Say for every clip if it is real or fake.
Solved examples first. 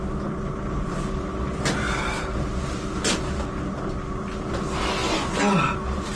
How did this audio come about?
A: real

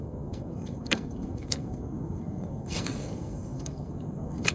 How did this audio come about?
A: fake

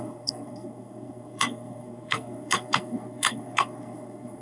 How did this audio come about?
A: fake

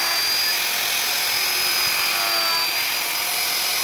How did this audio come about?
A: real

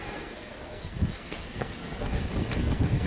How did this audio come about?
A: fake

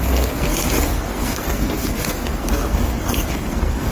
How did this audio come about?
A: fake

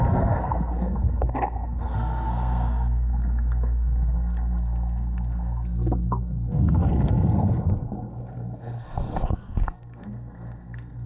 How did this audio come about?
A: fake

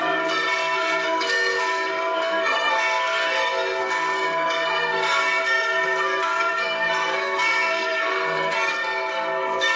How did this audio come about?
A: fake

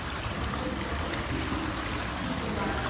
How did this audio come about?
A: real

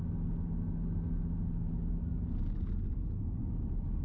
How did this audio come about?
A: real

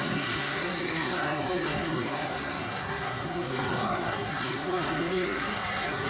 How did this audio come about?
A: fake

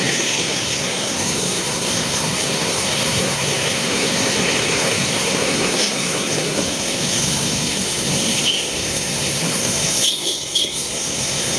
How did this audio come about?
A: fake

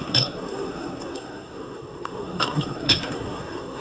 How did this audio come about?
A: fake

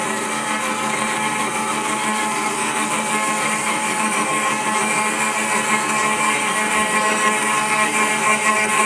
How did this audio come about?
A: fake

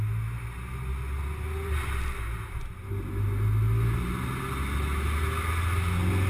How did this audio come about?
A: real